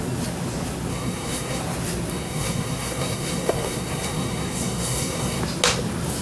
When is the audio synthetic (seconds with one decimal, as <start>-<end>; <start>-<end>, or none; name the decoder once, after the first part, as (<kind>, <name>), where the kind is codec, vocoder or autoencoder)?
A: 0.9-1.6 (codec, SNAC); 2.1-5.4